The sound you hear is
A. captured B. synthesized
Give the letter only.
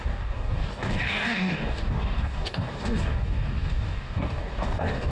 B